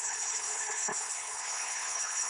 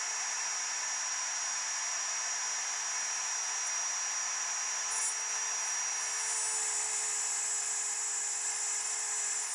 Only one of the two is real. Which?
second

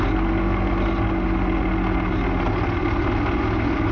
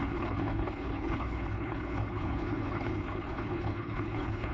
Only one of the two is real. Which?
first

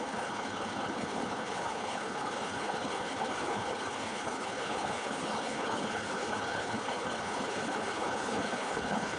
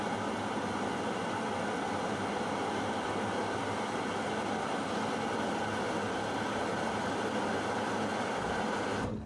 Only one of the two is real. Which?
second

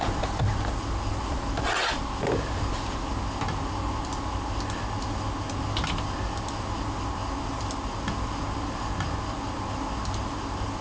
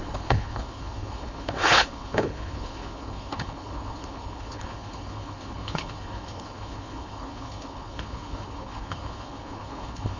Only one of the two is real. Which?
first